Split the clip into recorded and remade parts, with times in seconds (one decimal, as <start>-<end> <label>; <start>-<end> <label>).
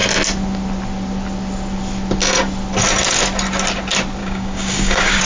0.0-4.2 recorded; 4.2-5.2 remade